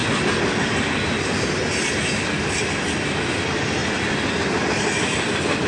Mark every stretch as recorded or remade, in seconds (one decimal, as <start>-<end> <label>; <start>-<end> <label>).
0.0-5.7 recorded